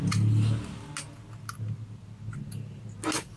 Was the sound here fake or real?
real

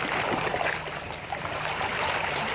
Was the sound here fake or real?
real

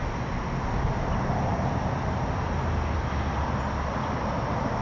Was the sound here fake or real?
real